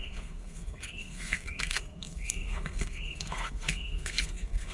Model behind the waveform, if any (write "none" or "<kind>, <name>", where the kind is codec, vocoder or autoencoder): codec, SNAC